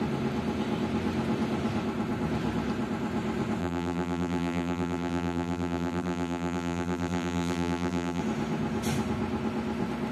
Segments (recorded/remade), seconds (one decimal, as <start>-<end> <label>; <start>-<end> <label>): 0.0-3.6 recorded; 3.6-8.2 remade; 8.2-10.1 recorded